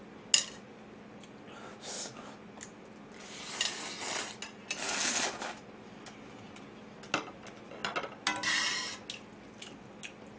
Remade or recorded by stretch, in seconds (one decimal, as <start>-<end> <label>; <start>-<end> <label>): 0.0-10.4 recorded